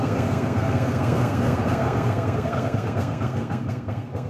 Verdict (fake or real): fake